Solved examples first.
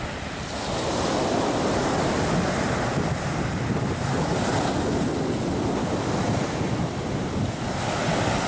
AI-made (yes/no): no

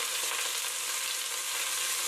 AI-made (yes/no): no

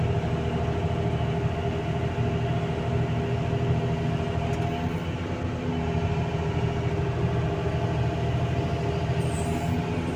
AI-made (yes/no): no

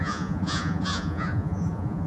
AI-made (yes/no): yes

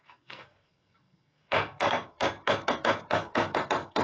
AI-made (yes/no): yes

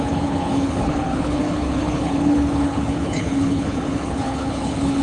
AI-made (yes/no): yes